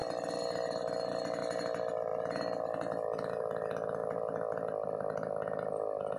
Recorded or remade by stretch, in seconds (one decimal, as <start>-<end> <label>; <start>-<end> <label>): 0.0-6.2 recorded